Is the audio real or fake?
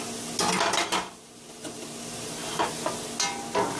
real